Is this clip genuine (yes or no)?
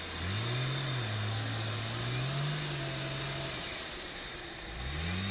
yes